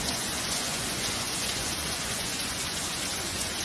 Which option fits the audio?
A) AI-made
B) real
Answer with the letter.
A